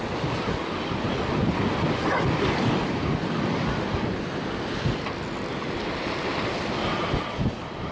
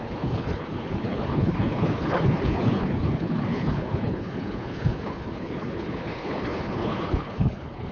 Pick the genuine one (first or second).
first